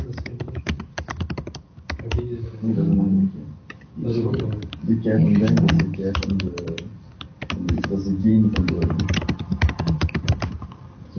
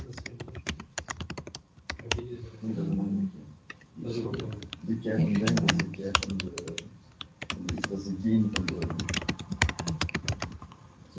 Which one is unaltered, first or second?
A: first